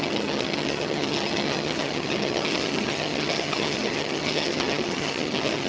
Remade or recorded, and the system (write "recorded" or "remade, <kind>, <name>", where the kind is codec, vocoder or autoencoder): remade, vocoder, HiFi-GAN